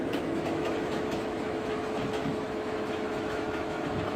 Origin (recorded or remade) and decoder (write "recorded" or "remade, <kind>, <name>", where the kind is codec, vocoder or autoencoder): remade, autoencoder, DAC-VAE